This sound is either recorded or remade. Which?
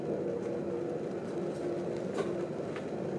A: recorded